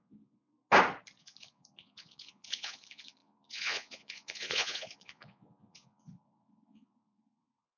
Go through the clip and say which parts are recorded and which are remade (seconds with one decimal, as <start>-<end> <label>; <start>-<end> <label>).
0.0-0.5 remade; 0.5-1.2 recorded; 1.2-7.8 remade